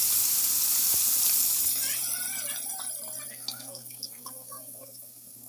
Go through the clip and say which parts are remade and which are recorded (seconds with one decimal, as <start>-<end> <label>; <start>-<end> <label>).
0.0-3.3 recorded; 3.3-5.5 remade